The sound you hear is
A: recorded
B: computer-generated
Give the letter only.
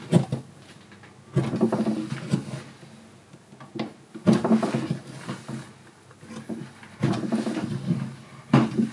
A